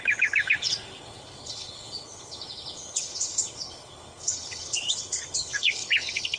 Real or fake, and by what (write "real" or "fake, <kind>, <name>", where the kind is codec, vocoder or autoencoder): fake, codec, HILCodec